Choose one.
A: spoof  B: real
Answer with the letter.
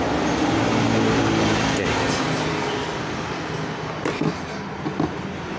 B